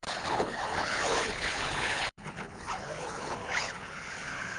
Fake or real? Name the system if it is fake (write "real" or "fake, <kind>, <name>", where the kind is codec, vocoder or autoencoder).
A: fake, codec, HILCodec